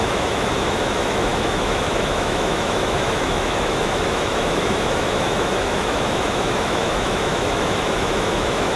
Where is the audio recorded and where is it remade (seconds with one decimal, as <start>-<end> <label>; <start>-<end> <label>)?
0.0-8.8 remade